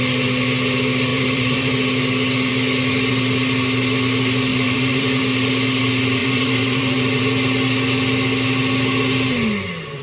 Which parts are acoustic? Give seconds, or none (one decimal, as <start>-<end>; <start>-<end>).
0.0-1.1; 1.7-4.5; 5.2-6.2; 7.2-10.0